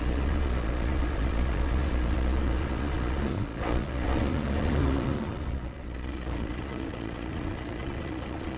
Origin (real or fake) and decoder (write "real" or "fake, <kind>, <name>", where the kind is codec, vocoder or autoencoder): fake, vocoder, Vocos